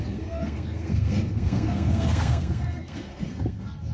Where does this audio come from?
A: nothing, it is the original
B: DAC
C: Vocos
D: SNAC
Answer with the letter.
D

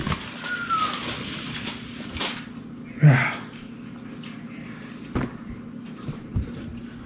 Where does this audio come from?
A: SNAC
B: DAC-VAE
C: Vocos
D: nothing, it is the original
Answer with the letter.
D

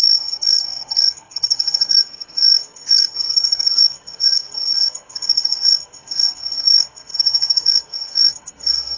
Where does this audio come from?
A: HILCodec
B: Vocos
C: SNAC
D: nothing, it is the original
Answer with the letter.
C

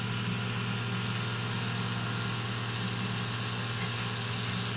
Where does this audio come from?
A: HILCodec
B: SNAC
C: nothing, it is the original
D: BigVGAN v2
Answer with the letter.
C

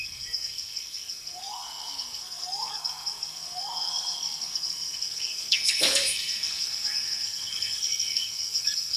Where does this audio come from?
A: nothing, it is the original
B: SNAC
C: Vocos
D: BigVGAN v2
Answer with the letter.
B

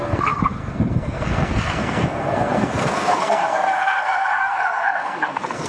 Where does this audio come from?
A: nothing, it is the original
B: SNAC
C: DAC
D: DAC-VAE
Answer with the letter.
B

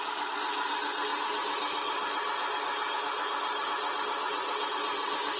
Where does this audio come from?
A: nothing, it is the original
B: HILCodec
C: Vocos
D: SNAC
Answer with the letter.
A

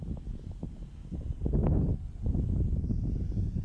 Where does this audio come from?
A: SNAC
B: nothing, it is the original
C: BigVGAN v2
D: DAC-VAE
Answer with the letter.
B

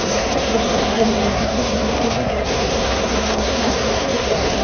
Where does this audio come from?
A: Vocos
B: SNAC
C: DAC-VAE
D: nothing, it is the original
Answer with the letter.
B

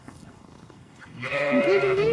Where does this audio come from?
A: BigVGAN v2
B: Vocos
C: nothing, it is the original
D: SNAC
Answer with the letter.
D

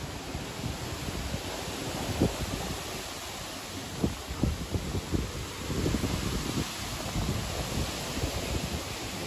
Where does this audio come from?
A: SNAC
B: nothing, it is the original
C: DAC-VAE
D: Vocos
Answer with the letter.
B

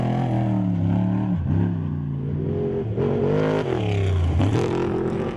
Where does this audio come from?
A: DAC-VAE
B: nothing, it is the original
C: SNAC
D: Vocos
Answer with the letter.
B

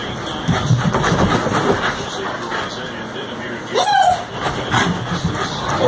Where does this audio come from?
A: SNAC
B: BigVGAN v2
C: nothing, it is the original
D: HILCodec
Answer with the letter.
C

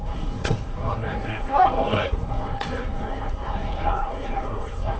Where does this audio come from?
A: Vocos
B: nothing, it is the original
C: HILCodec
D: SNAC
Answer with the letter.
D